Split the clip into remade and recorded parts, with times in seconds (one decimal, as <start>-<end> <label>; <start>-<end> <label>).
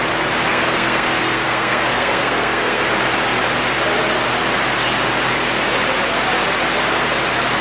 0.0-0.5 recorded; 0.5-2.8 remade; 2.8-7.6 recorded